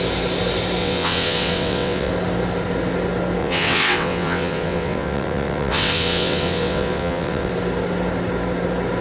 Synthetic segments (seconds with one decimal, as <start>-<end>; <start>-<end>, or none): 0.8-2.1; 3.4-7.5